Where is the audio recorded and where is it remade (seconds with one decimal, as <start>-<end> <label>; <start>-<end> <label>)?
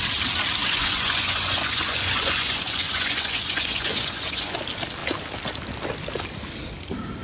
0.0-0.6 recorded; 0.6-4.6 remade; 4.6-7.2 recorded